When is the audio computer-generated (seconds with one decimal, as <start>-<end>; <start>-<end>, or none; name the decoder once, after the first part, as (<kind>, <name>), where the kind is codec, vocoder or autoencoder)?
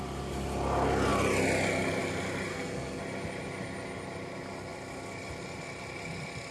2.5-3.0 (codec, SNAC)